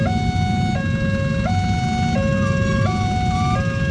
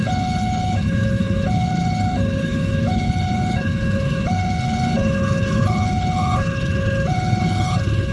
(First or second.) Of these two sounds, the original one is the first